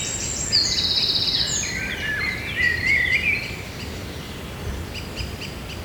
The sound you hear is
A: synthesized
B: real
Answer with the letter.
A